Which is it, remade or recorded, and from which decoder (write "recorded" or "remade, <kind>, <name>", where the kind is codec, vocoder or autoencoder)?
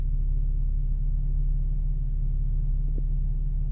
recorded